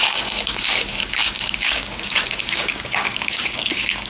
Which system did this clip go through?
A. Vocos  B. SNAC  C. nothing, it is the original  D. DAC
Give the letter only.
D